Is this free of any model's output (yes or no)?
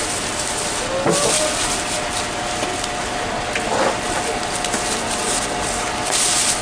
yes